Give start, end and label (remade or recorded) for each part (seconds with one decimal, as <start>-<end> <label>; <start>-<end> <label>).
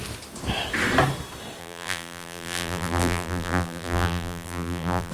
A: 0.0-1.6 recorded; 1.6-5.1 remade